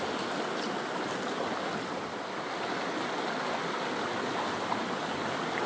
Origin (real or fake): real